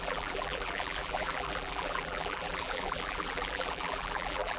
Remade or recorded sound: remade